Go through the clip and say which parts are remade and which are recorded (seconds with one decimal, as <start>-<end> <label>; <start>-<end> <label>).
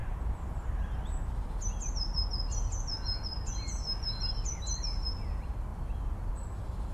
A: 0.0-1.4 remade; 1.4-6.9 recorded